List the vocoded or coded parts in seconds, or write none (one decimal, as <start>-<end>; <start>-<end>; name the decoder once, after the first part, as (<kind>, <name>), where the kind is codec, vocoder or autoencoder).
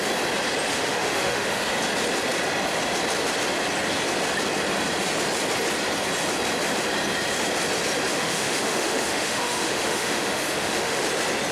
0.7-1.6 (autoencoder, DAC-VAE); 8.1-11.0